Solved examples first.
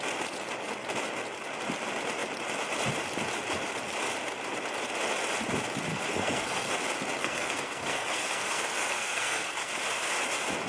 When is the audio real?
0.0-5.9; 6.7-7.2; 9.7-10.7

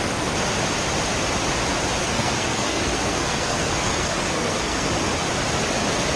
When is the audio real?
0.0-2.0; 4.9-6.2

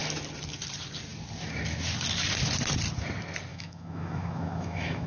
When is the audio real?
0.0-3.5